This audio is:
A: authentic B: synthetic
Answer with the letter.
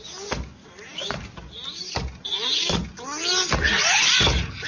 B